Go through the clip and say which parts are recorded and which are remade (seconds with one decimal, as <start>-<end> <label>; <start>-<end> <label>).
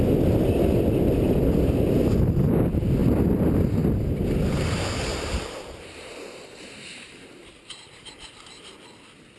0.0-5.1 recorded; 5.1-8.8 remade; 8.8-9.4 recorded